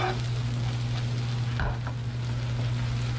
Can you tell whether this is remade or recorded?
recorded